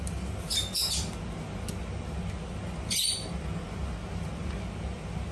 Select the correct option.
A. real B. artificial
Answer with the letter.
A